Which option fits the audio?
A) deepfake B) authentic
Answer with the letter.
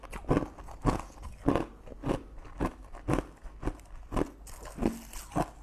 B